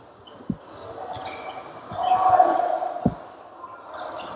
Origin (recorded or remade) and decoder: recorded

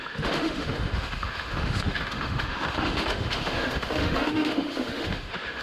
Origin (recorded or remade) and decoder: remade, autoencoder, DAC-VAE